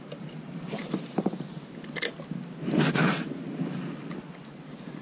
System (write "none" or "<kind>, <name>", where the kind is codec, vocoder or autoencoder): none